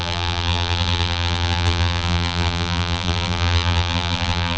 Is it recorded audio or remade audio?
remade